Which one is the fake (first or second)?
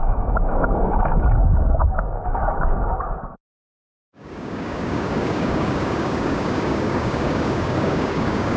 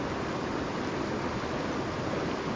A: first